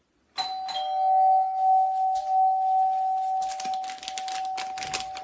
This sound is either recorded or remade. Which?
recorded